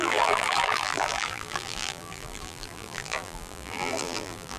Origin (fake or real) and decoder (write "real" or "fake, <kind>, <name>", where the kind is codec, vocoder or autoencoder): fake, vocoder, BigVGAN v2